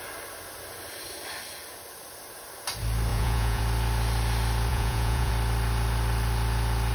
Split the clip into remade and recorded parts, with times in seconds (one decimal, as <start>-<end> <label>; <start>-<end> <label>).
0.0-3.1 recorded; 3.1-3.6 remade; 3.6-4.7 recorded; 4.7-5.3 remade; 5.3-6.9 recorded